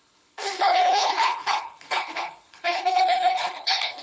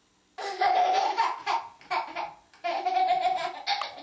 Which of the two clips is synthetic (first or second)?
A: first